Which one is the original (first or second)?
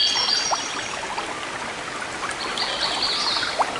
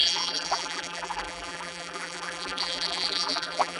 first